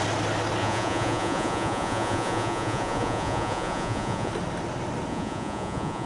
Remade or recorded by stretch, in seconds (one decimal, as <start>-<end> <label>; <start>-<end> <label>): 0.0-0.6 recorded; 0.6-4.3 remade; 4.3-5.1 recorded; 5.1-6.1 remade